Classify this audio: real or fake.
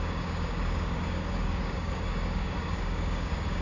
fake